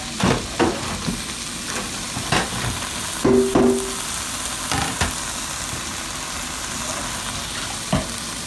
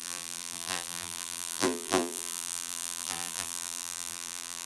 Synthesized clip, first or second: second